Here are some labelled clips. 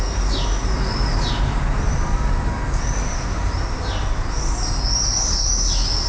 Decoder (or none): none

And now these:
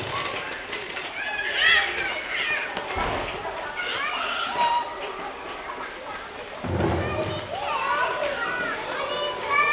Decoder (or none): none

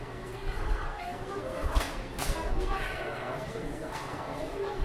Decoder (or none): codec, SNAC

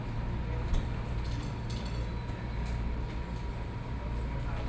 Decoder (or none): none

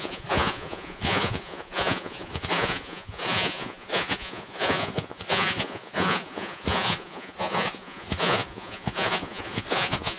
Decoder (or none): vocoder, Vocos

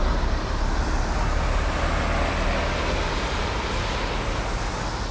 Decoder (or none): none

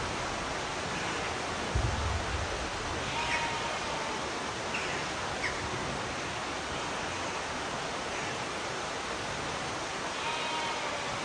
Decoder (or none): none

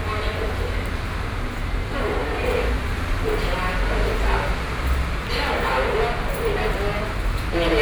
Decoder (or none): none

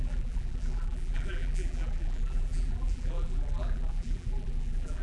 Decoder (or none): vocoder, BigVGAN v2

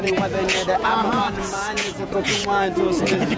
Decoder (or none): vocoder, Vocos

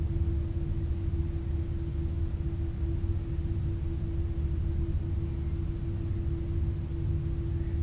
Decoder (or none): none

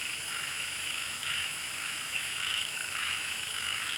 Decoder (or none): autoencoder, DAC-VAE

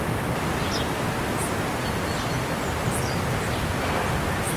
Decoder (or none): none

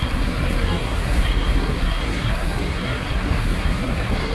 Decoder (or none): codec, SNAC